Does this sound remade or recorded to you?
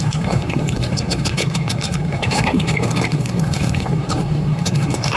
remade